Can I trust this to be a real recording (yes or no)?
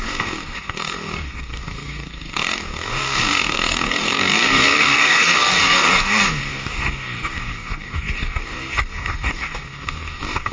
no